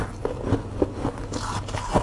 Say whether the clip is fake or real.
real